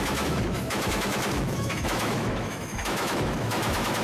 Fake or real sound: fake